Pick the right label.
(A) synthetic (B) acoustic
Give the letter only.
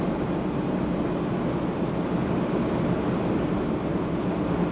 B